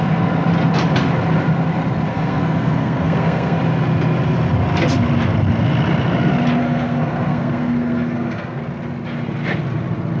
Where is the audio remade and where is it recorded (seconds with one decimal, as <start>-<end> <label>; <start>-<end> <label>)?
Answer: 0.0-2.1 recorded; 2.1-3.6 remade; 3.6-6.6 recorded; 6.6-8.6 remade; 8.6-10.2 recorded